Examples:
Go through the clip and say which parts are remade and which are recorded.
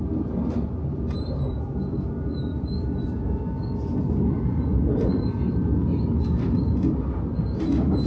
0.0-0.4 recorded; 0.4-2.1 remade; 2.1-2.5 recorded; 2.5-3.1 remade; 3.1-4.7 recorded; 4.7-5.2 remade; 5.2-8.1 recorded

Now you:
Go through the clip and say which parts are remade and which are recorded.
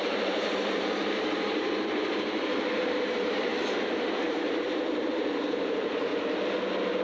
0.0-3.5 remade; 3.5-4.1 recorded; 4.1-6.1 remade; 6.1-7.0 recorded